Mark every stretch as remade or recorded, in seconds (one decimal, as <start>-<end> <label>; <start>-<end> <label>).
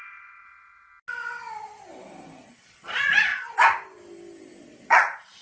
0.0-0.9 remade; 0.9-2.4 recorded; 2.4-3.3 remade; 3.3-4.6 recorded; 4.6-5.4 remade